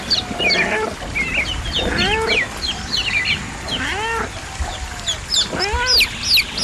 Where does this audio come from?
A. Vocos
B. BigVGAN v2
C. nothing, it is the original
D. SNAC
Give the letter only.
C